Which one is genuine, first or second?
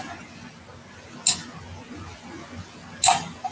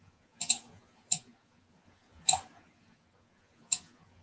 first